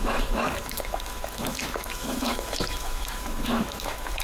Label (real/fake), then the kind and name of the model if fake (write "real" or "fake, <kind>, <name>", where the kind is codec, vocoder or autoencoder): fake, autoencoder, DAC-VAE